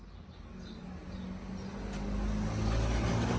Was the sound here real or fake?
real